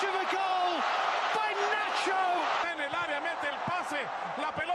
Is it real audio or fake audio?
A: fake